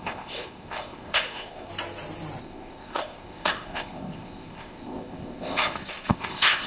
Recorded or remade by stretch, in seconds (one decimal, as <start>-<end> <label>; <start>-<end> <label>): 0.0-1.7 remade; 1.7-2.4 recorded; 2.4-6.7 remade